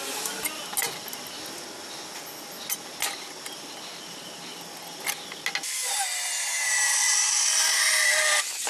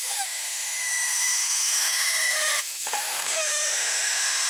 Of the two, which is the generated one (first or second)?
second